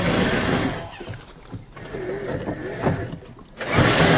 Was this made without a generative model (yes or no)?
yes